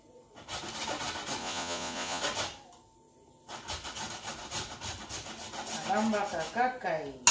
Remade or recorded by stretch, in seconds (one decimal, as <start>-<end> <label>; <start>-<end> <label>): 0.0-1.4 recorded; 1.4-2.2 remade; 2.2-7.3 recorded